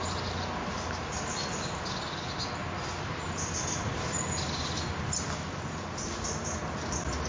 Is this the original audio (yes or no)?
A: yes